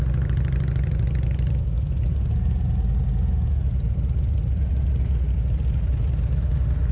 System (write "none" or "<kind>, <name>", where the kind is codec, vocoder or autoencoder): none